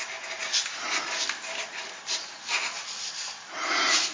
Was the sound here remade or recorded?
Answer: recorded